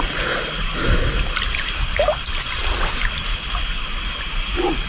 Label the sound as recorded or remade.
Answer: recorded